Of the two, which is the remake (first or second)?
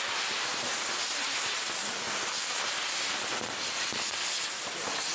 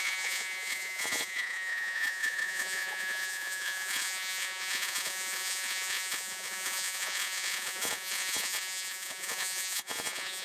second